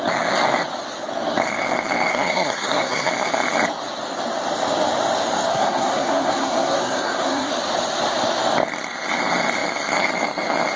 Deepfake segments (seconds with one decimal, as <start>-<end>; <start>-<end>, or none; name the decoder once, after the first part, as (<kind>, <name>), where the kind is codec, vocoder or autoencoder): 2.1-3.1 (codec, SNAC); 5.5-7.5